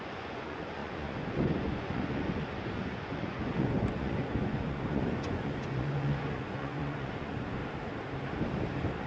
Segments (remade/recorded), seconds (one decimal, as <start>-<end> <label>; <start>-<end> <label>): 0.0-7.6 remade; 7.6-9.1 recorded